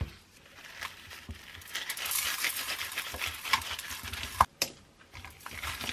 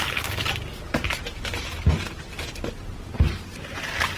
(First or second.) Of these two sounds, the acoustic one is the second